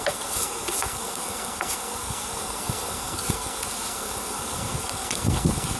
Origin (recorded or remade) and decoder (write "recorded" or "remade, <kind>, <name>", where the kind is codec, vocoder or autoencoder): remade, codec, SNAC